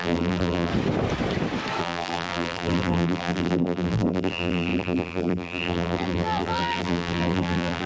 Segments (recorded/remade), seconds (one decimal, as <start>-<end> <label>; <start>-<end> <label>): 0.0-0.7 remade; 0.7-1.8 recorded; 1.8-7.9 remade

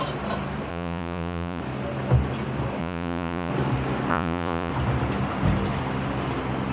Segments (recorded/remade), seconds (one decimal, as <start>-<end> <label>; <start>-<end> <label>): 0.0-0.7 recorded; 0.7-1.6 remade; 1.6-2.8 recorded; 2.8-3.5 remade; 3.5-4.1 recorded; 4.1-4.7 remade; 4.7-6.7 recorded

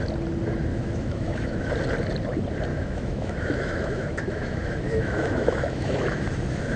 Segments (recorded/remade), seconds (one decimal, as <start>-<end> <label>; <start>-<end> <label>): 0.0-0.7 recorded; 0.7-1.7 remade; 1.7-2.7 recorded; 2.7-6.2 remade; 6.2-6.8 recorded

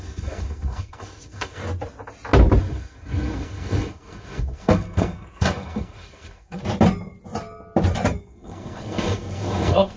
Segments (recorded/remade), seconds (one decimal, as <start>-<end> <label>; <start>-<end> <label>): 0.0-1.6 remade; 1.6-2.6 recorded; 2.6-6.6 remade; 6.6-8.2 recorded; 8.2-10.0 remade

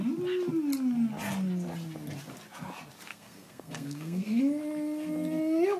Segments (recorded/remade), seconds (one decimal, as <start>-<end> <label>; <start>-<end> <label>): 0.0-3.1 recorded; 3.1-4.4 remade; 4.4-5.8 recorded

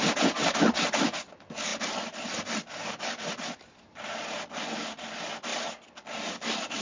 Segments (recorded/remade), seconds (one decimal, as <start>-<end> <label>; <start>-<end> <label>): 0.0-6.8 recorded

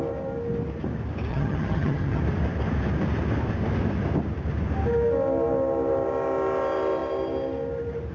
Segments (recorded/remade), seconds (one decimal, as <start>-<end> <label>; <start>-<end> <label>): 0.0-1.3 recorded; 1.3-2.2 remade; 2.2-8.1 recorded

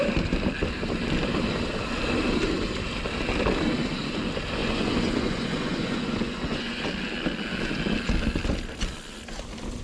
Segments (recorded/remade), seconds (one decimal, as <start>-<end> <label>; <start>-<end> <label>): 0.0-4.6 recorded; 4.6-6.8 remade; 6.8-9.8 recorded